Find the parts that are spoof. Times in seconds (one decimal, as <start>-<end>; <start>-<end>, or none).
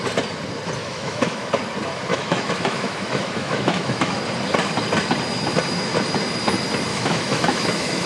0.8-1.5; 2.1-4.2; 6.9-8.1